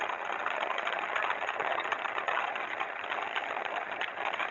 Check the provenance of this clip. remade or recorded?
remade